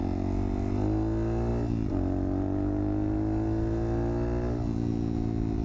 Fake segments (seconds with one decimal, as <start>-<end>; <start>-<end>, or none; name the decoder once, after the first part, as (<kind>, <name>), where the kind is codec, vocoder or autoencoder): none